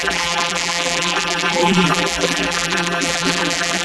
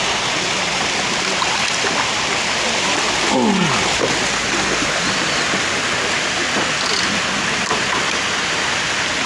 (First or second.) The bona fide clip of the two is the second